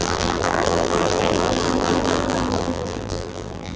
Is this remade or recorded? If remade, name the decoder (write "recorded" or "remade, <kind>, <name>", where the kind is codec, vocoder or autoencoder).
remade, vocoder, BigVGAN v2